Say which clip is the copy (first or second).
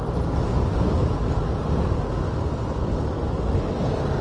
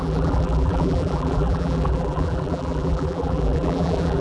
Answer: second